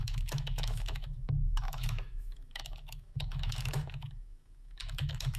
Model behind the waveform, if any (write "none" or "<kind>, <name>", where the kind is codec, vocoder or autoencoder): autoencoder, DAC-VAE